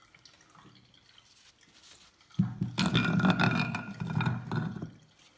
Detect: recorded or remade recorded